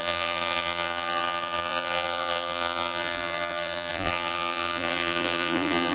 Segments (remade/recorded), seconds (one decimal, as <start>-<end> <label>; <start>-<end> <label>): 0.0-5.9 remade